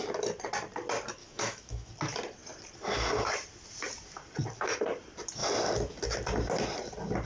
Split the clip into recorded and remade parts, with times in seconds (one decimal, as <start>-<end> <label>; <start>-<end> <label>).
0.0-1.2 recorded; 1.2-1.9 remade; 1.9-7.3 recorded